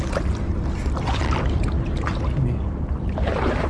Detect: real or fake real